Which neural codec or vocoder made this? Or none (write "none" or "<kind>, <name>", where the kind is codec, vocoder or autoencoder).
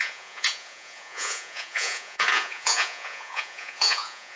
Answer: vocoder, Vocos